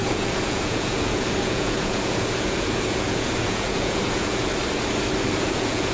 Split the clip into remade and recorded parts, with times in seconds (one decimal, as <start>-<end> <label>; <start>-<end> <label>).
0.0-4.5 remade; 4.5-5.4 recorded; 5.4-5.9 remade